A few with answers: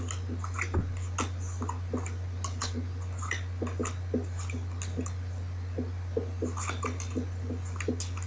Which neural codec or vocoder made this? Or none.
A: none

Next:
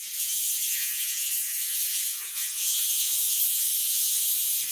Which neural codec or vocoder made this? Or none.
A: vocoder, Vocos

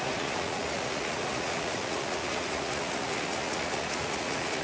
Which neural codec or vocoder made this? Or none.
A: vocoder, Vocos